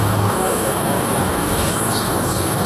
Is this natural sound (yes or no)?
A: no